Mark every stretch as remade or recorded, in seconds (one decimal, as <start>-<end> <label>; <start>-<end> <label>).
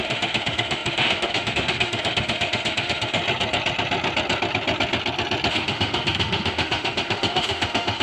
0.0-3.2 remade; 3.2-5.5 recorded; 5.5-8.0 remade